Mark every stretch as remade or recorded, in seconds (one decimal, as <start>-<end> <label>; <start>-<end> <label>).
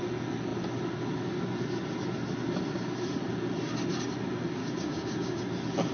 0.0-4.6 recorded; 4.6-5.4 remade; 5.4-5.9 recorded